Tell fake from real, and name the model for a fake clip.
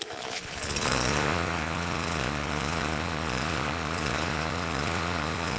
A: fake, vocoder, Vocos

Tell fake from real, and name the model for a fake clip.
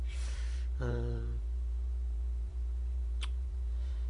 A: fake, vocoder, BigVGAN v2